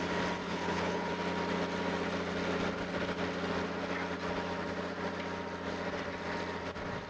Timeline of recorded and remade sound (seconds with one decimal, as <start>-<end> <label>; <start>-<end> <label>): 0.0-0.4 recorded; 0.4-1.1 remade; 1.1-7.1 recorded